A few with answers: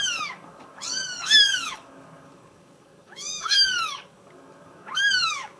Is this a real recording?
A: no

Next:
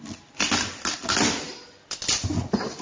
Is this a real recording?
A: yes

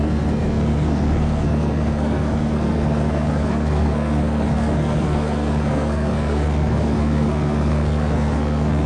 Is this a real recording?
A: no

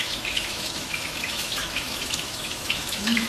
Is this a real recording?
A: no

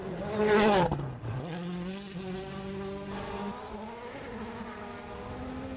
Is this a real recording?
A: yes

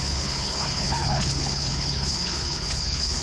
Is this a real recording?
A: no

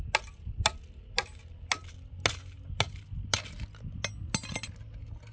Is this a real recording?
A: yes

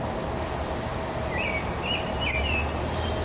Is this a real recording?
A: yes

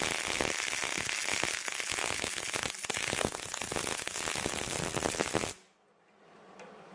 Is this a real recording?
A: yes